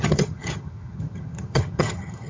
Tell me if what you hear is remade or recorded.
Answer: remade